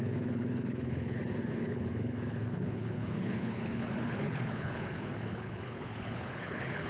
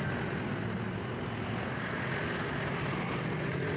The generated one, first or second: first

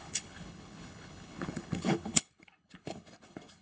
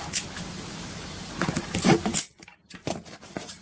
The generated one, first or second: first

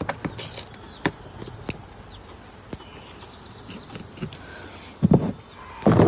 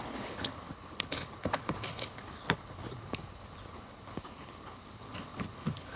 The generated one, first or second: second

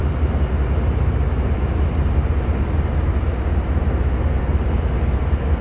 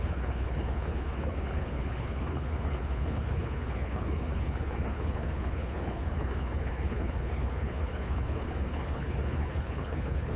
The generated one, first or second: second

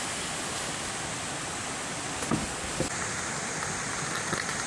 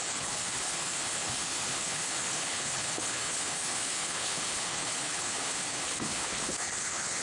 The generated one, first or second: second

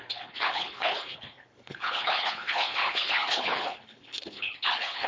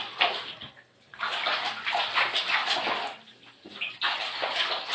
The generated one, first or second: first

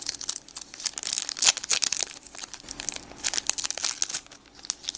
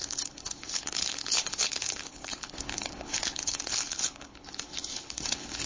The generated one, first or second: second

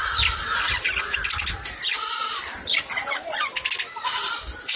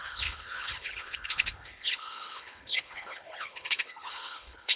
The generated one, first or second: second